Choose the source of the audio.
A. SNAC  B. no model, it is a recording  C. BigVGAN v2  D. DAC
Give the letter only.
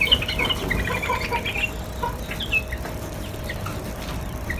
B